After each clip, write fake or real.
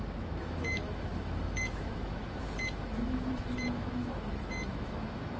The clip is fake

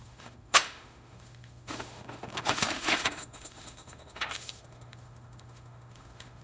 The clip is fake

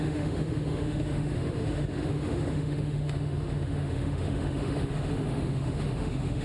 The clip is fake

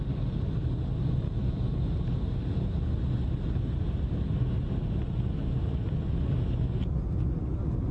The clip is real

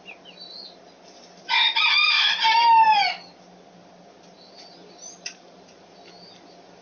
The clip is real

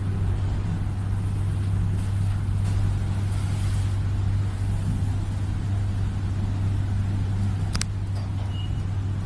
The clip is real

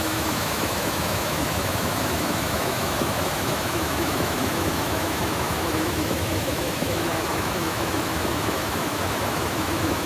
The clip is fake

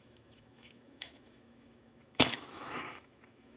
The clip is fake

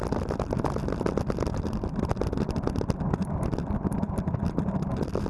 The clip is real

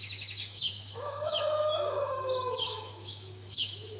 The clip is fake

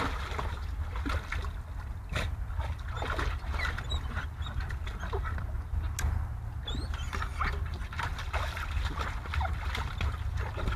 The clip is real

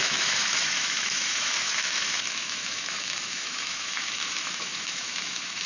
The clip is fake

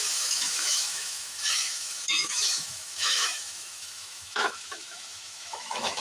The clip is fake